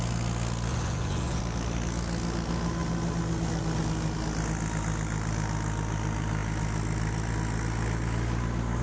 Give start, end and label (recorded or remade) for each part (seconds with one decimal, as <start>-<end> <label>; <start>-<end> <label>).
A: 0.0-0.7 recorded; 0.7-1.4 remade; 1.4-8.8 recorded